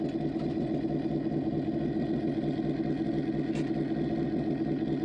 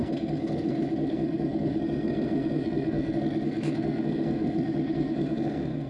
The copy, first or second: second